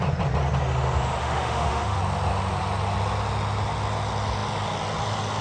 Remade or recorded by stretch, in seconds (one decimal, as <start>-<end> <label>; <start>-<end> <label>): 0.0-1.2 recorded; 1.2-2.0 remade; 2.0-5.4 recorded